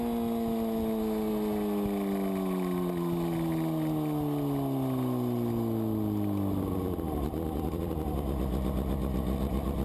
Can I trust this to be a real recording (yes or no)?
yes